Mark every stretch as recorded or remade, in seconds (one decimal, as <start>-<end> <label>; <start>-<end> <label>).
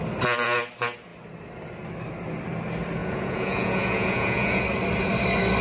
0.0-3.0 recorded; 3.0-4.6 remade; 4.6-5.6 recorded